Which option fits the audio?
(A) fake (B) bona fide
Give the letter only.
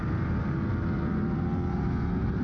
B